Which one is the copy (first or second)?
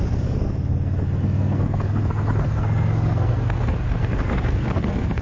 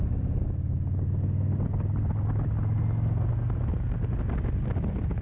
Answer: first